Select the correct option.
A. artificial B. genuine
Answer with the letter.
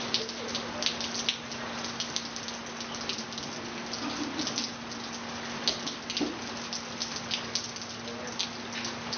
B